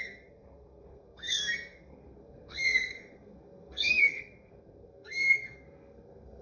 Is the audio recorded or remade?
remade